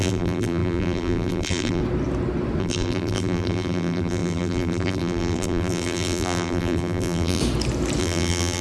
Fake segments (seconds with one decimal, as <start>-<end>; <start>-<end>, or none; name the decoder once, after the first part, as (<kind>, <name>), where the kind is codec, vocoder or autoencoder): 0.0-1.8 (vocoder, BigVGAN v2); 2.6-7.4; 8.0-8.6

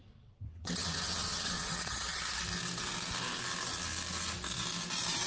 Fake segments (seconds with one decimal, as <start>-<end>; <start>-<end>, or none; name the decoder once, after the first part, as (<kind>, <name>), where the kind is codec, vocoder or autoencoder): 0.0-2.2 (vocoder, WaveNeXt)

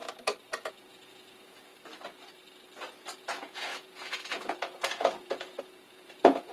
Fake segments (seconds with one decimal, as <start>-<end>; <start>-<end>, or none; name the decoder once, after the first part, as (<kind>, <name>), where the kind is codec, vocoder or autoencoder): 0.7-1.7 (vocoder, Vocos); 3.2-6.5

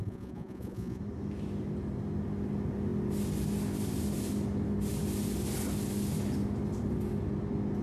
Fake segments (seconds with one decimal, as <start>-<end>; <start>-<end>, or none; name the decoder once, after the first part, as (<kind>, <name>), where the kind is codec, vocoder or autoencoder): 0.0-1.0 (vocoder, Vocos)